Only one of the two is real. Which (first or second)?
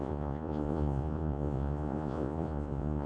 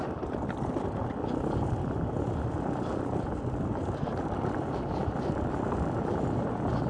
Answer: second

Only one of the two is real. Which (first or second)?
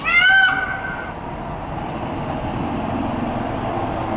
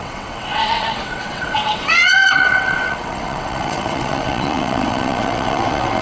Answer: first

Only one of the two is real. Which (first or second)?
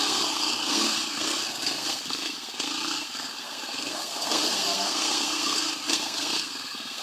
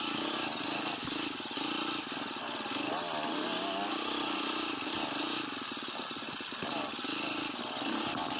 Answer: second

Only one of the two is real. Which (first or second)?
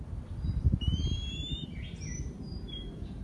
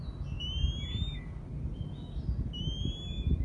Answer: second